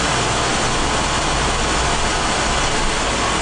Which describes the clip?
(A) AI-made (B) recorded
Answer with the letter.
B